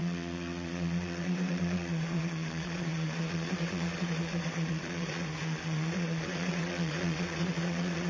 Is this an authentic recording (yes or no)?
no